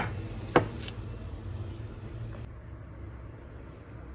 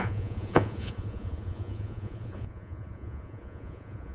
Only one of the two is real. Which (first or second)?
first